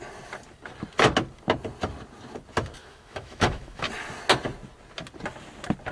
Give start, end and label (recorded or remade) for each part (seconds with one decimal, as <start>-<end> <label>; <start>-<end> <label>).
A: 0.0-2.8 recorded; 2.8-3.9 remade; 3.9-5.9 recorded